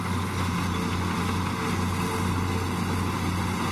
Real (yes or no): yes